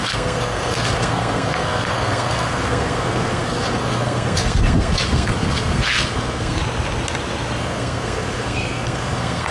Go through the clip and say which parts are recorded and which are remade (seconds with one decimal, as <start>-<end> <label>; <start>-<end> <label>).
0.0-6.6 remade; 6.6-7.6 recorded; 7.6-9.5 remade